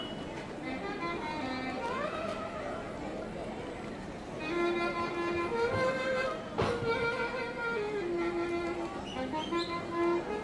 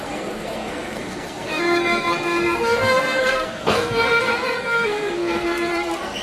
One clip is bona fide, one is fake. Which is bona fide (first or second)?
first